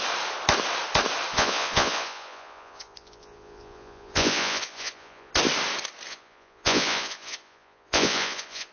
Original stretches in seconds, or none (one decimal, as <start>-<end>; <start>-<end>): 0.0-1.3; 5.3-6.1